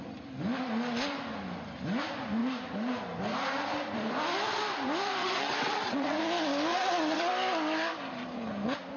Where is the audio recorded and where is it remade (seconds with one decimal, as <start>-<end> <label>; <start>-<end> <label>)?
0.0-5.2 recorded; 5.2-6.2 remade; 6.2-6.7 recorded; 6.7-7.3 remade; 7.3-9.0 recorded